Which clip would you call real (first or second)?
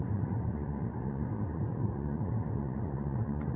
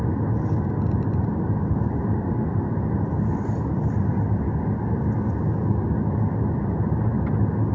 second